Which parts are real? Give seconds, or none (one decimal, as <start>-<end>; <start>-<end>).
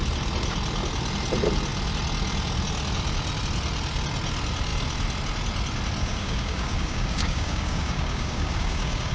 0.0-6.0